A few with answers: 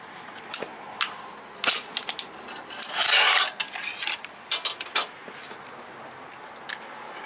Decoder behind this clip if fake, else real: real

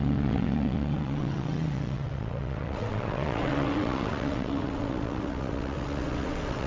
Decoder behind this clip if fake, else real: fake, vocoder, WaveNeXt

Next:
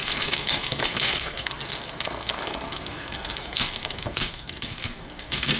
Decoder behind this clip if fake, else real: fake, codec, SNAC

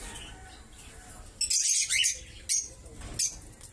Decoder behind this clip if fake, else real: real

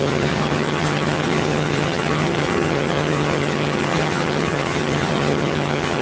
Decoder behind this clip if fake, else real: fake, vocoder, HiFi-GAN